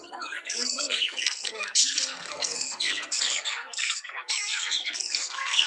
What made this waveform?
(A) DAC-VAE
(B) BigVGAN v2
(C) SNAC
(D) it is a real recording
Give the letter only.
C